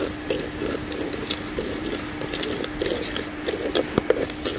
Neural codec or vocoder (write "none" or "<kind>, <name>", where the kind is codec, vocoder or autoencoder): none